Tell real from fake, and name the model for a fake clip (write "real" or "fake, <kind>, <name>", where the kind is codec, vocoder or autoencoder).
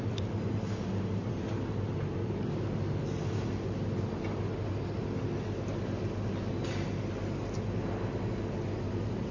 real